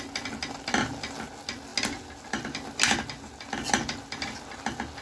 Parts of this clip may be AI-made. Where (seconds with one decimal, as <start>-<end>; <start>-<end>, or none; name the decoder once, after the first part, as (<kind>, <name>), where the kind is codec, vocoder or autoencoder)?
none

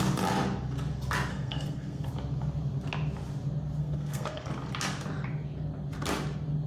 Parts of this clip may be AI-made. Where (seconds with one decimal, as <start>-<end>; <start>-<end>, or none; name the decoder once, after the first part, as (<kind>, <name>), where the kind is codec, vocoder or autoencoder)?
1.3-2.1 (codec, SNAC); 3.8-4.4

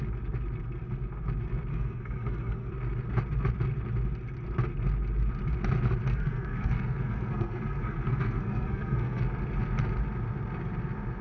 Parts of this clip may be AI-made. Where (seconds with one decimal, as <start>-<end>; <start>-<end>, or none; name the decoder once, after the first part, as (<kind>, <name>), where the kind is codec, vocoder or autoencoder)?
1.7-2.7 (codec, SNAC); 6.1-9.2

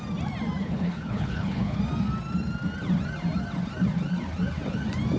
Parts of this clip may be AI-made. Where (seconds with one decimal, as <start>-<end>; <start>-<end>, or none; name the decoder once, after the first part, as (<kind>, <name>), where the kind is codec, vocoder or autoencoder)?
0.6-1.8 (codec, HILCodec)

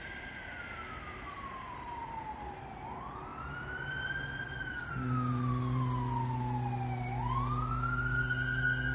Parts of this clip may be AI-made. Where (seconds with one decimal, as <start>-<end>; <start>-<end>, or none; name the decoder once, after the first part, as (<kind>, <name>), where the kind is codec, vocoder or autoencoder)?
3.3-4.1 (vocoder, BigVGAN v2)

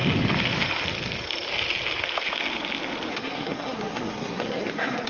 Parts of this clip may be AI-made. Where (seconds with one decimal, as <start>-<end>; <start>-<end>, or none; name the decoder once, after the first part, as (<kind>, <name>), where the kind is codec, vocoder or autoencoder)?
3.1-5.1 (codec, SNAC)

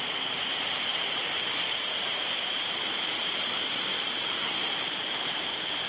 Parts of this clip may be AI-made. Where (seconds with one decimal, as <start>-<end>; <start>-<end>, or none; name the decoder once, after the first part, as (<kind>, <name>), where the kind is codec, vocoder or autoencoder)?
0.0-5.9 (vocoder, BigVGAN v2)

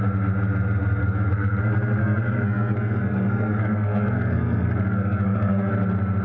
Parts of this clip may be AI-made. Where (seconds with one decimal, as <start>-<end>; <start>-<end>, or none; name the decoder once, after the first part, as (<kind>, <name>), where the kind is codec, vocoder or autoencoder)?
1.0-1.6 (codec, SNAC); 2.0-5.7